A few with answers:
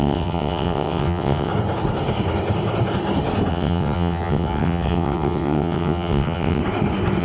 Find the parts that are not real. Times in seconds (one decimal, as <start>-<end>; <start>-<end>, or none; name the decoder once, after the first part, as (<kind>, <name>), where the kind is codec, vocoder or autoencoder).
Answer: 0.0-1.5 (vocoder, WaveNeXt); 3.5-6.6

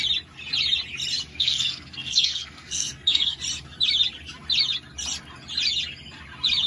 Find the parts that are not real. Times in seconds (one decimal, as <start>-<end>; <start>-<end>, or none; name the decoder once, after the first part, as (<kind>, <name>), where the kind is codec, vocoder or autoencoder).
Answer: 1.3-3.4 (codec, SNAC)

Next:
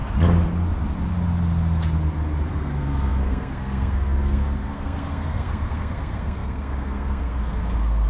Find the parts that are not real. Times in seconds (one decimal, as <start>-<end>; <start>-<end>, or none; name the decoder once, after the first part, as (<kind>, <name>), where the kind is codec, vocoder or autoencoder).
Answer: 2.5-8.1 (codec, SNAC)

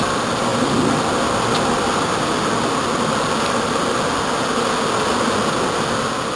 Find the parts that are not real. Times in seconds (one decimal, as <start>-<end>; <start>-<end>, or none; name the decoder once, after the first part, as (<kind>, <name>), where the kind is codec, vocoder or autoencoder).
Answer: none

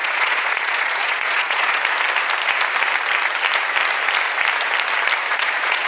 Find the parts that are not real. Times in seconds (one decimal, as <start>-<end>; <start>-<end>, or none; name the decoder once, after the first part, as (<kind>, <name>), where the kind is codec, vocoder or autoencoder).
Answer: 0.0-1.8 (vocoder, Vocos); 5.3-5.9

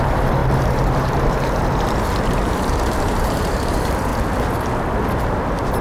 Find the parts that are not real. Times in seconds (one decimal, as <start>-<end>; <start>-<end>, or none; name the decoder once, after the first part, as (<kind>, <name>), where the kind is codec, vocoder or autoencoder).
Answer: 0.0-4.1 (vocoder, BigVGAN v2)